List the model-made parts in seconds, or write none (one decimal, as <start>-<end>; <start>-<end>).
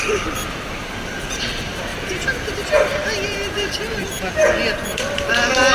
none